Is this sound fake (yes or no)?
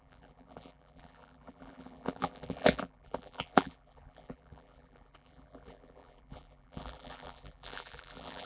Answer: yes